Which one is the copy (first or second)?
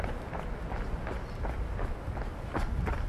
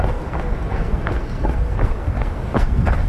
second